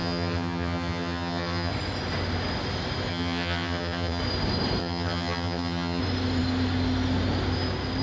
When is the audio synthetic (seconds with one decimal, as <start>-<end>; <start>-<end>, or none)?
0.0-1.7; 3.1-4.2; 4.8-6.0